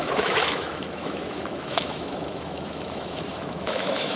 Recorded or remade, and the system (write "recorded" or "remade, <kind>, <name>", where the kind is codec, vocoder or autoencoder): remade, autoencoder, DAC-VAE